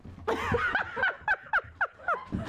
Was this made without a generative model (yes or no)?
yes